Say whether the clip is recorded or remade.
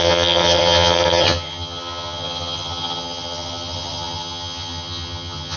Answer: remade